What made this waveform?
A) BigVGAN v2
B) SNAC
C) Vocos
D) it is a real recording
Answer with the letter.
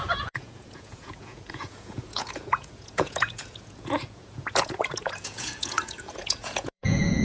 C